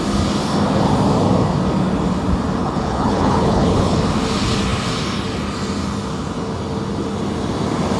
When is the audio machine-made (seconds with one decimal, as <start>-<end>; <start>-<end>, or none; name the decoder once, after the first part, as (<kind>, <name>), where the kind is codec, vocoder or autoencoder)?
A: 2.6-4.0 (codec, HILCodec)